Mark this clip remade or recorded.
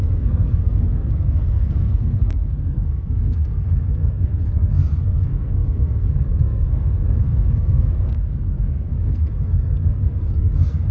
remade